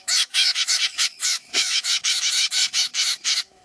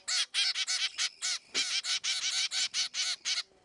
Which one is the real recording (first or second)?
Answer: second